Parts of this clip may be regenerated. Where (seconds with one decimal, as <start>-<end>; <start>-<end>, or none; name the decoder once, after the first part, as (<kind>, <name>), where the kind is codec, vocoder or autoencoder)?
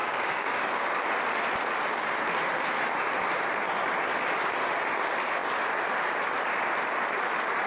0.0-1.0 (codec, DAC)